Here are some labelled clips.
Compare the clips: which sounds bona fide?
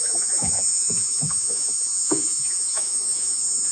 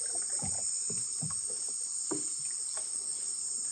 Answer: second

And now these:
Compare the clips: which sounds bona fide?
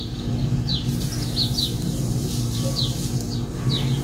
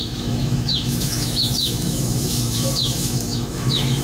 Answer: first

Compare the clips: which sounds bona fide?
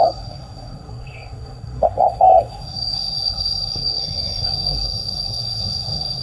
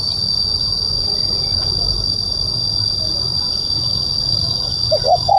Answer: second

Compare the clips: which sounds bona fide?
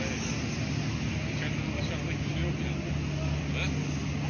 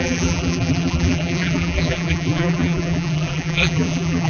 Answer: first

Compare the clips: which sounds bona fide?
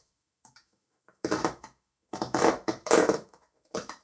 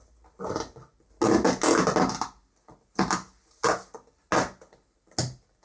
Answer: second